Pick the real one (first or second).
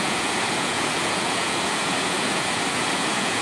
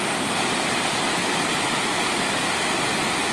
second